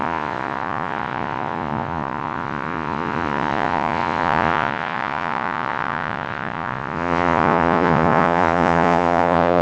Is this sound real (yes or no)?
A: no